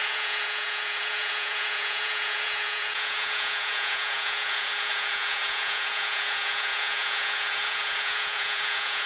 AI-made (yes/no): yes